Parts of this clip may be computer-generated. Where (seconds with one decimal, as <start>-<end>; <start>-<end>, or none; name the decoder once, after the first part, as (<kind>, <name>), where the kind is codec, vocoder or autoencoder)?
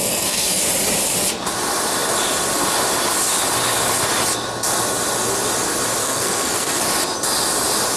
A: 0.0-0.6 (codec, SNAC); 6.0-6.8